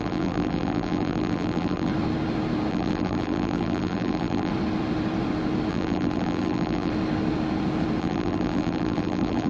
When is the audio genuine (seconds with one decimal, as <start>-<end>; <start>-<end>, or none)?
1.9-2.7; 4.5-5.7; 6.9-8.0